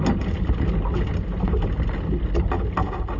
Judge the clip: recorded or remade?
recorded